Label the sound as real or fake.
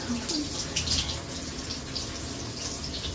real